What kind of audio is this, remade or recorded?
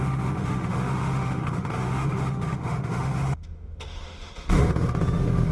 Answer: remade